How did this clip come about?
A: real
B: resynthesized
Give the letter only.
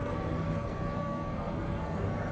B